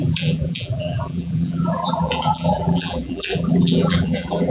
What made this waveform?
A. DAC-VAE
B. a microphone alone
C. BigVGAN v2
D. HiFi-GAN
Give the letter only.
C